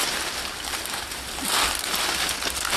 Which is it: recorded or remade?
recorded